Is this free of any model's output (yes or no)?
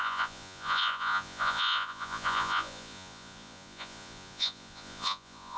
no